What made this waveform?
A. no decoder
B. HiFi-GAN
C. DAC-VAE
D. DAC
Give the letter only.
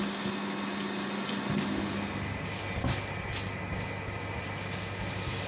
A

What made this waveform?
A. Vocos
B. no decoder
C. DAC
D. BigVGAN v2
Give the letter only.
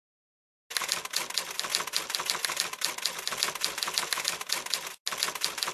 B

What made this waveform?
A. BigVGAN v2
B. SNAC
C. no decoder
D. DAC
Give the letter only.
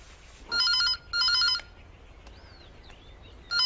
C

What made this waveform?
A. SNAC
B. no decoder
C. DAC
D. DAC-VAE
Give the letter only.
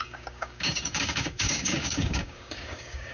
C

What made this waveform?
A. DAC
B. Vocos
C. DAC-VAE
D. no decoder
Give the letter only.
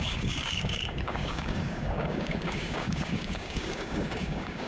A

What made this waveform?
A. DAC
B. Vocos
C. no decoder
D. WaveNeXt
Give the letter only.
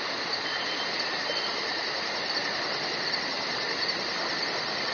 C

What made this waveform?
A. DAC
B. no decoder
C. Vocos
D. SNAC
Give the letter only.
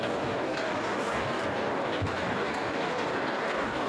A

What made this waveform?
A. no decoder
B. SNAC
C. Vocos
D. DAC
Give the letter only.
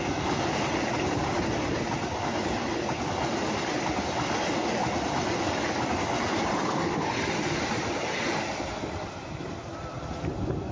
A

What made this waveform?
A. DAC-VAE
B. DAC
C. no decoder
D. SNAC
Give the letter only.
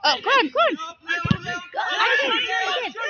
C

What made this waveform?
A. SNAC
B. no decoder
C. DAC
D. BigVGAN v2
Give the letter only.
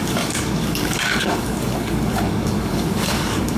C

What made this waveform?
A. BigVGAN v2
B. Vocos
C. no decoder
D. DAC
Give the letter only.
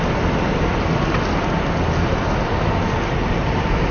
C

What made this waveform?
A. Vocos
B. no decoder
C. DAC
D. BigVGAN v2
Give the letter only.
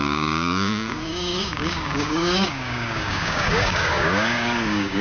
C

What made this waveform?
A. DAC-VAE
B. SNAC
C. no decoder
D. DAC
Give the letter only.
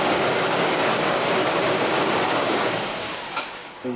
D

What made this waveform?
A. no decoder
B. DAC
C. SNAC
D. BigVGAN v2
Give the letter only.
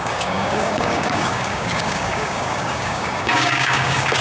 B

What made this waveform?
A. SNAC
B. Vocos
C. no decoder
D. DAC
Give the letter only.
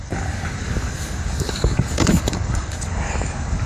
D